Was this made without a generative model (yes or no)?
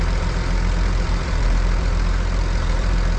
no